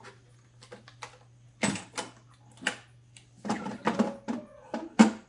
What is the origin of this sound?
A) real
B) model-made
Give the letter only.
A